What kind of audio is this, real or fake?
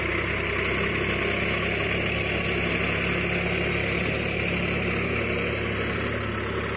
real